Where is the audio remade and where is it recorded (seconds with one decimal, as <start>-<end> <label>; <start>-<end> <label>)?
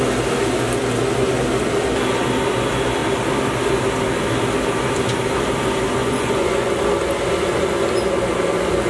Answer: 0.0-6.0 recorded; 6.0-6.7 remade; 6.7-8.9 recorded